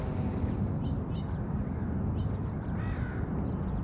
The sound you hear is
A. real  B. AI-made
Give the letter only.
A